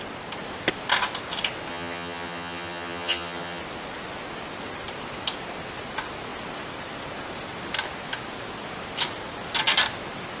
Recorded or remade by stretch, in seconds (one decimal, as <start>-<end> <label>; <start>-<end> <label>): 0.0-1.7 recorded; 1.7-3.6 remade; 3.6-10.4 recorded